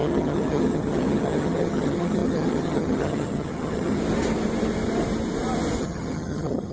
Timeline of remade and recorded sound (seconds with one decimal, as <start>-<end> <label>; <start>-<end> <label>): 0.0-4.0 remade; 4.0-5.8 recorded; 5.8-6.7 remade